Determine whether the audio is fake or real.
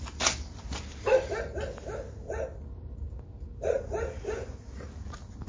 real